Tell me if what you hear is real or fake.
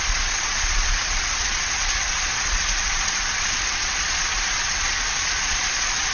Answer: fake